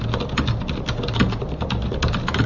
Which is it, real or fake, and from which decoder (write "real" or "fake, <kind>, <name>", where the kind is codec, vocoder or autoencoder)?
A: real